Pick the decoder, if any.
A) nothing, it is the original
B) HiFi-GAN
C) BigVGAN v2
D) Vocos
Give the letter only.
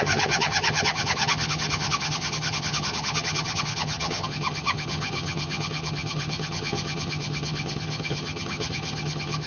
B